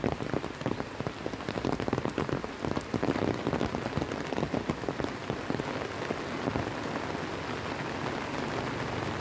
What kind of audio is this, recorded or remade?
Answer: recorded